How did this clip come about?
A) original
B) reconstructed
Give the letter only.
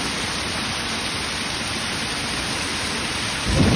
A